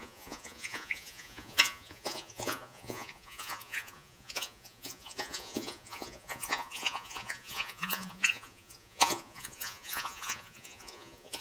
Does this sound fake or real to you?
fake